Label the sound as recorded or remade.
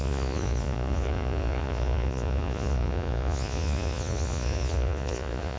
remade